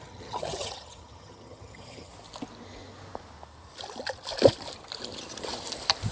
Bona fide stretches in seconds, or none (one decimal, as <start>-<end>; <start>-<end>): 2.1-6.1